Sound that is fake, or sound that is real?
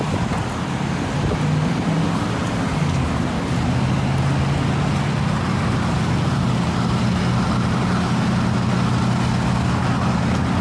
real